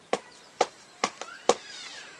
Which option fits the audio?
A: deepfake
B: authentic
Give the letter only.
A